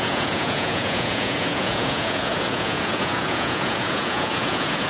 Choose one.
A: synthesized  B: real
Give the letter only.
A